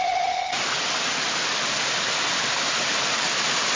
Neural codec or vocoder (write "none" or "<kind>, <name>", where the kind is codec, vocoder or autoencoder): none